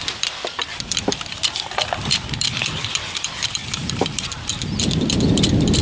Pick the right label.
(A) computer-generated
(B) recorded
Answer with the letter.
A